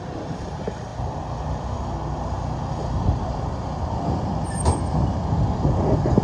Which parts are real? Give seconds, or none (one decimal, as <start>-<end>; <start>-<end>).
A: 0.0-6.2